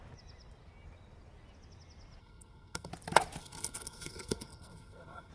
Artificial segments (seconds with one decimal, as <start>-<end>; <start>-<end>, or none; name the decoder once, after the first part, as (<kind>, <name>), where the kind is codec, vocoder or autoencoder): 2.2-2.9 (codec, SNAC); 3.4-5.3